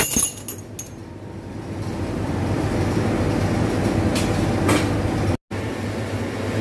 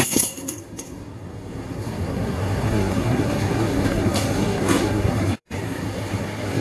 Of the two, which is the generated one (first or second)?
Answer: second